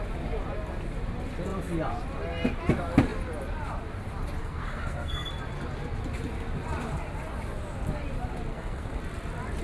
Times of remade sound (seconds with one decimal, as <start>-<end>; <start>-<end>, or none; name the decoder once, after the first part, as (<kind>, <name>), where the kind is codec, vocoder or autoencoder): 4.4-5.3 (codec, SNAC); 8.5-9.0